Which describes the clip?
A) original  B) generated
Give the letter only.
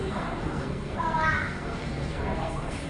B